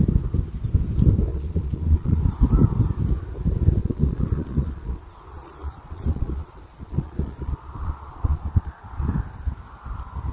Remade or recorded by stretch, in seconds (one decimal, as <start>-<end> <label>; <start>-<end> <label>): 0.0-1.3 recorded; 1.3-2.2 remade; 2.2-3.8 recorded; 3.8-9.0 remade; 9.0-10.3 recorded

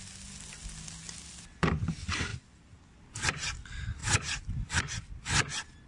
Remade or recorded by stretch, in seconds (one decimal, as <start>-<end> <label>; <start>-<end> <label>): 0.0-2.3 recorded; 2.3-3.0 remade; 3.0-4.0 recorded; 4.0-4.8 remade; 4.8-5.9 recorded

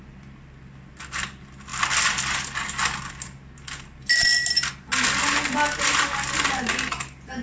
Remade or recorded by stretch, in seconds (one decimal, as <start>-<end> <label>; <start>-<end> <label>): 0.0-7.4 recorded